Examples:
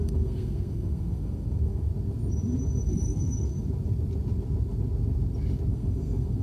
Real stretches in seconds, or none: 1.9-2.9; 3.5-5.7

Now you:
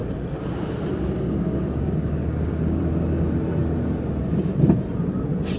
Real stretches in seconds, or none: 2.8-5.6

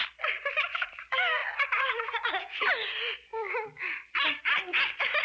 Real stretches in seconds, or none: 0.0-1.4; 2.0-5.2

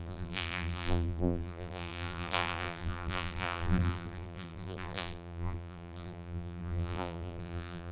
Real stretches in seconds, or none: none

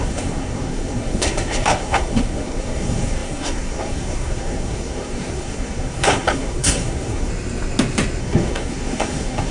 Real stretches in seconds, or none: 7.3-8.2

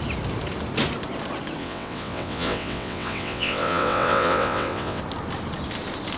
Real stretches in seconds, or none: 0.0-1.6; 5.0-6.2

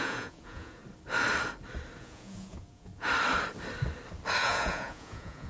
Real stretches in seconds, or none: 0.8-2.0; 2.9-4.4

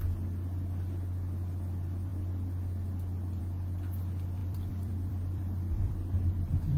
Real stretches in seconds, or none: 0.0-4.4